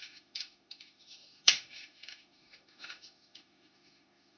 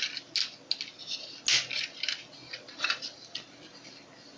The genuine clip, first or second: second